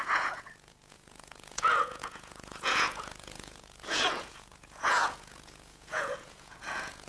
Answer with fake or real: fake